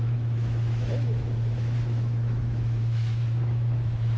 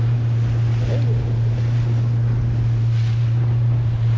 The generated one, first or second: first